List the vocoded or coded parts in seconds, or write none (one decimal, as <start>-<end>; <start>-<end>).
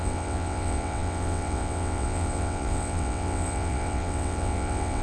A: 0.0-5.0